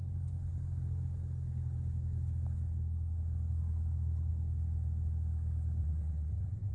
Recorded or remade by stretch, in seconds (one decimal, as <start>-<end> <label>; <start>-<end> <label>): 0.0-5.8 recorded; 5.8-6.7 remade